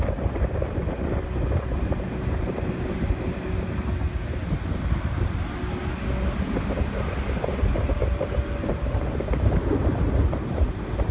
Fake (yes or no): no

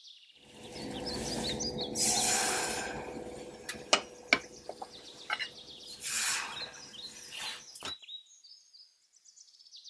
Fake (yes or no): no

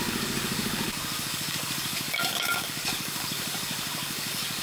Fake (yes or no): yes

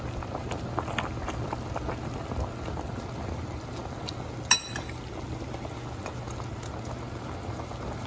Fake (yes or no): no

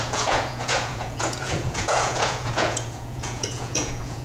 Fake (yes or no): yes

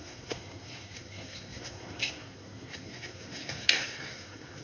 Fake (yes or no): yes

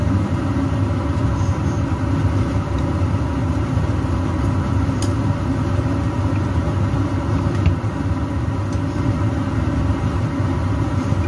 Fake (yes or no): no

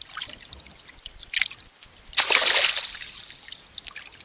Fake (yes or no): no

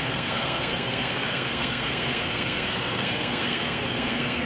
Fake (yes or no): yes